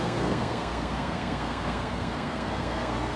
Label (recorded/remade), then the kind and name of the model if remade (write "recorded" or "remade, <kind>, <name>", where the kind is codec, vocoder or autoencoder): remade, codec, SNAC